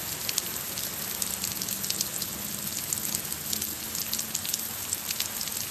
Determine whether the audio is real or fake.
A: real